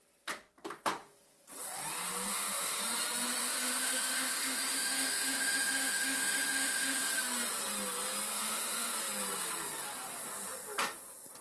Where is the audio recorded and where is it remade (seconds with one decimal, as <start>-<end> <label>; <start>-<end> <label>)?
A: 0.0-2.3 recorded; 2.3-2.8 remade; 2.8-3.4 recorded; 3.4-7.0 remade; 7.0-8.3 recorded; 8.3-8.9 remade; 8.9-11.4 recorded

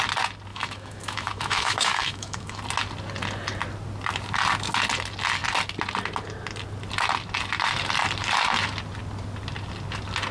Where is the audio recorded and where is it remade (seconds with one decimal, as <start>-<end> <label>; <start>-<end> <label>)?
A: 0.0-0.5 recorded; 0.5-2.6 remade; 2.6-10.3 recorded